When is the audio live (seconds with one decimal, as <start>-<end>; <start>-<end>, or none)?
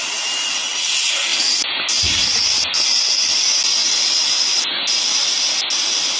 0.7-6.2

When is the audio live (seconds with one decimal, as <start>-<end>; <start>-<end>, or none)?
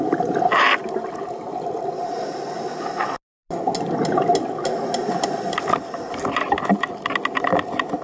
0.0-8.0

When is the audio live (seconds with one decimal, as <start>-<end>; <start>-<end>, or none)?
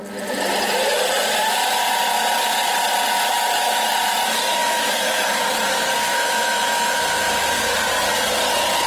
0.0-3.3; 4.0-4.6; 5.4-6.1; 7.0-8.9